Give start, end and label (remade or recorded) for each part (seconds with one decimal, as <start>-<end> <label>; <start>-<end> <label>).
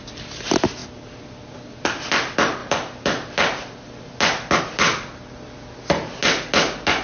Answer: 0.0-7.0 recorded